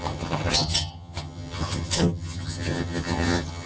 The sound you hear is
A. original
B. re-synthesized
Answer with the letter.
B